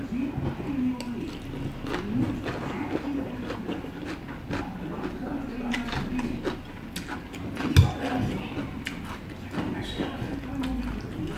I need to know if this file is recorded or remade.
recorded